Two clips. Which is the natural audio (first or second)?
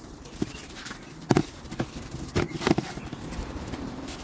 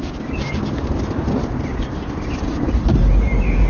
second